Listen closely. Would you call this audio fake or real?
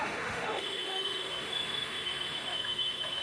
fake